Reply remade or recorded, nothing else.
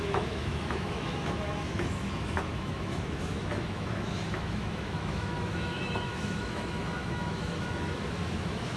remade